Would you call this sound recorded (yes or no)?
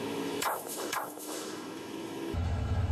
no